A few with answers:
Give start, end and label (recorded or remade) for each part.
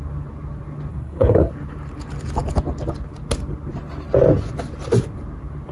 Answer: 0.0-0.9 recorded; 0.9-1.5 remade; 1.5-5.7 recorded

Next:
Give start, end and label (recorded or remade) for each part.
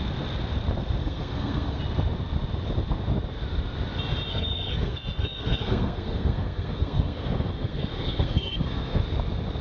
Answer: 0.0-1.0 recorded; 1.0-1.8 remade; 1.8-4.3 recorded; 4.3-9.0 remade; 9.0-9.6 recorded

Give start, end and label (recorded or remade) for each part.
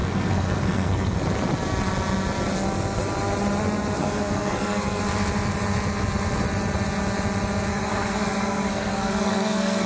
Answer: 0.0-1.2 remade; 1.2-4.0 recorded; 4.0-5.0 remade; 5.0-7.7 recorded; 7.7-9.9 remade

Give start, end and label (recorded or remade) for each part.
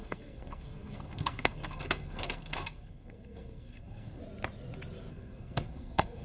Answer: 0.0-4.2 remade; 4.2-5.1 recorded; 5.1-6.2 remade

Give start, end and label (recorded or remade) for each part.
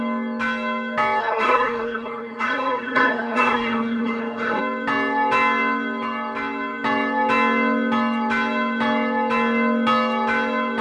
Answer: 0.0-1.2 recorded; 1.2-4.6 remade; 4.6-10.8 recorded